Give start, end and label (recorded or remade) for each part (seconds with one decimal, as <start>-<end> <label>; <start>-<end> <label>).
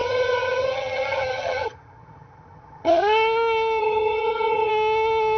0.0-2.9 remade; 2.9-3.8 recorded; 3.8-4.7 remade; 4.7-5.4 recorded